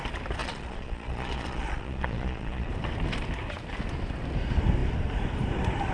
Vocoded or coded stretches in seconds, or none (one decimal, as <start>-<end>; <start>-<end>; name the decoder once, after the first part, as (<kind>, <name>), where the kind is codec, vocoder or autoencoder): 0.4-2.7 (vocoder, Vocos)